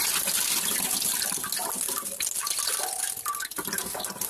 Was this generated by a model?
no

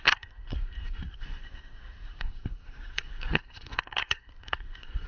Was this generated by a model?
yes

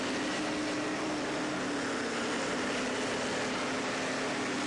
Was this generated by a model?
no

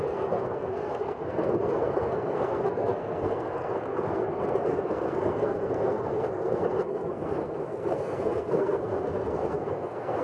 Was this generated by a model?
yes